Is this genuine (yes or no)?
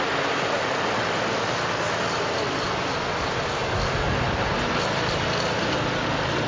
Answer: yes